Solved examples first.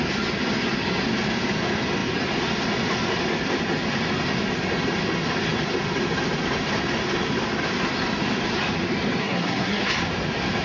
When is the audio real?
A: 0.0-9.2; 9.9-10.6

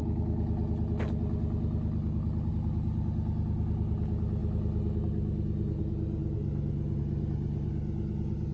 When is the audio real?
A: 0.0-2.5; 4.4-5.8; 6.2-7.0

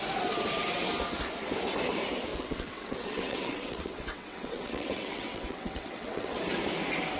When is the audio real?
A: 0.0-2.3; 6.4-7.2

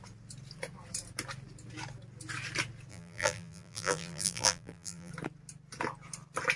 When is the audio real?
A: 0.0-2.9; 5.1-6.6

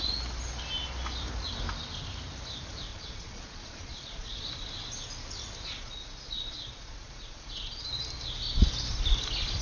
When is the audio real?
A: 0.0-2.9; 4.4-5.8; 7.9-9.6

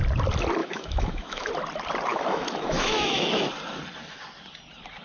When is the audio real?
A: 0.0-0.6; 1.5-2.1; 3.5-5.0